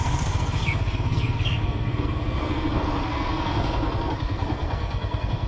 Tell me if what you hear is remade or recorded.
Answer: remade